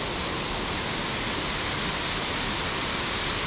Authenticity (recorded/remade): recorded